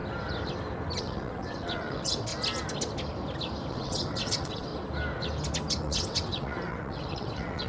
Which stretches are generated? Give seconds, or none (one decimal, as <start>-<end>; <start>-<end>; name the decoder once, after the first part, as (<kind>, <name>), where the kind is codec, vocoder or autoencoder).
1.0-2.3 (vocoder, WaveNeXt); 3.7-4.7; 5.8-7.7